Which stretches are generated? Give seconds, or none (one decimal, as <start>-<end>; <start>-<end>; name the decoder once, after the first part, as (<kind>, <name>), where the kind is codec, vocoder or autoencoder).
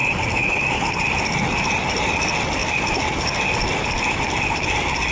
none